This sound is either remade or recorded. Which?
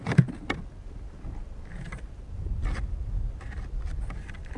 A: recorded